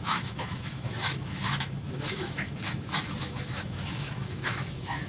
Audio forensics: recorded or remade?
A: remade